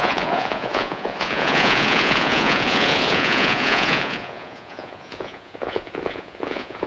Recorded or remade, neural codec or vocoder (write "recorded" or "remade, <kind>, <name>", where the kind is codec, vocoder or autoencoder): remade, vocoder, Vocos